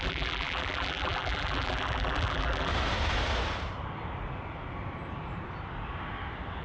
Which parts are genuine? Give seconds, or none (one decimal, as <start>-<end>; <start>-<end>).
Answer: 2.7-6.6